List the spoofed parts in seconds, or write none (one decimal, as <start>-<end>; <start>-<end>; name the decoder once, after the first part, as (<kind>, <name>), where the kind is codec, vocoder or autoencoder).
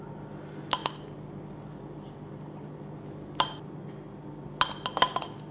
none